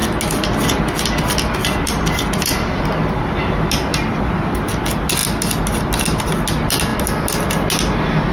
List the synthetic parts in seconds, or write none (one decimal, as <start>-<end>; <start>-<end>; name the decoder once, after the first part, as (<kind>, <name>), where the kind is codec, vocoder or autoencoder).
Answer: none